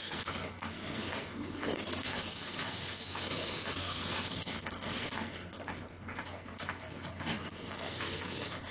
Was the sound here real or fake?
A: fake